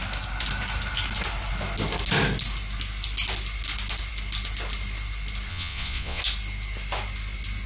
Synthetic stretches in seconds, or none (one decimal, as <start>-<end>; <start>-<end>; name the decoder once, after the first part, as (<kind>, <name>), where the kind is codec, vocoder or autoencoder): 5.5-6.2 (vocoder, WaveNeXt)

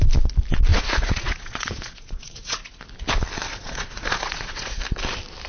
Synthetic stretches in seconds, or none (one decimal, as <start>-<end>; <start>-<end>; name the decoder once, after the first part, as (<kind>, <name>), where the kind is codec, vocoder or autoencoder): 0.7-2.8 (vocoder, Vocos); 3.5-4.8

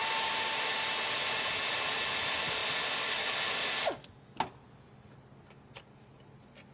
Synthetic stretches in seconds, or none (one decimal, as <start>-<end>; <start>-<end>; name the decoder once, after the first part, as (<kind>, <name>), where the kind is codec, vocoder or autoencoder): none

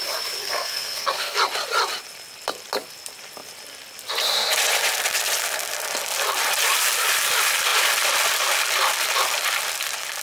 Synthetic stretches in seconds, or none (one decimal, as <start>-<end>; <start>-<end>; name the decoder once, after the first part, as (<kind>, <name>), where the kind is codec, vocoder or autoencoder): 0.4-1.4 (codec, SNAC)

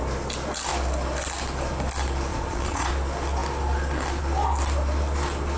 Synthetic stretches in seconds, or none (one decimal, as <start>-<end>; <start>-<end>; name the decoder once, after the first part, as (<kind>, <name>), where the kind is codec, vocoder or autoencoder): 2.3-2.9 (vocoder, Vocos)

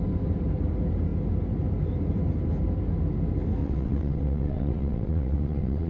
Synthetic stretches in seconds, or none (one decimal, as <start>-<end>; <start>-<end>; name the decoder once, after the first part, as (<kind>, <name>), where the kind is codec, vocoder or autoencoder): 3.6-5.9 (vocoder, WaveNeXt)

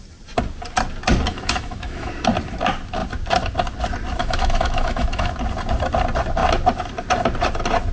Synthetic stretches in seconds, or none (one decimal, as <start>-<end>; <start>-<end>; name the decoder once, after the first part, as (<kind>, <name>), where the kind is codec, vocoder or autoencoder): 1.3-2.1 (autoencoder, DAC-VAE); 4.2-5.3